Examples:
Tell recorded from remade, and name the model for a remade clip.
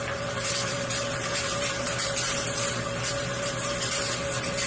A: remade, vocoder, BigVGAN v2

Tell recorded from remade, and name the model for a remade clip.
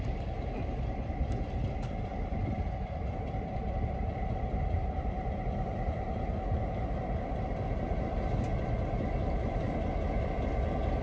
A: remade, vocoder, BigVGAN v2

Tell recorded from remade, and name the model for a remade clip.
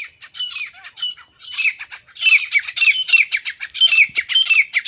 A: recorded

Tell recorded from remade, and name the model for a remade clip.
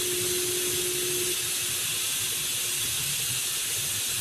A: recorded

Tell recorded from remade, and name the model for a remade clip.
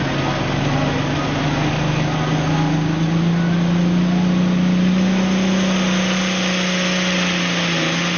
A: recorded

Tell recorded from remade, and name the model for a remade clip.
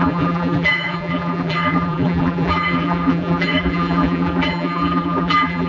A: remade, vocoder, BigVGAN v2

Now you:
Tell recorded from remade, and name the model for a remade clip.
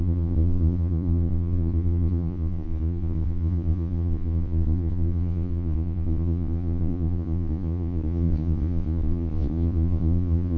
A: remade, vocoder, Vocos